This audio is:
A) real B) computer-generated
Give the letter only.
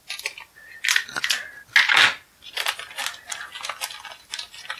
A